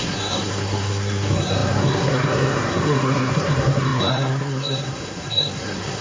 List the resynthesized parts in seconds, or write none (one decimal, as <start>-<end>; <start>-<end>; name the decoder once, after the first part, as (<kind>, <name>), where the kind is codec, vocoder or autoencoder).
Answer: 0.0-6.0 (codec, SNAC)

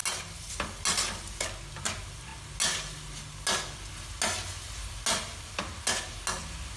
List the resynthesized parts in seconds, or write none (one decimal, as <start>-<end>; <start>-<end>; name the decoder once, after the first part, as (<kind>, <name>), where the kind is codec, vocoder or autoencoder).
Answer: none

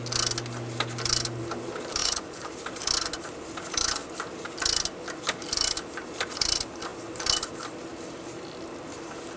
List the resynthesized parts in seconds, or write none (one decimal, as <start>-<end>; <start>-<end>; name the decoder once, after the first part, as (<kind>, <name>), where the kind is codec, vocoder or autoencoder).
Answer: 2.0-2.5 (vocoder, Vocos)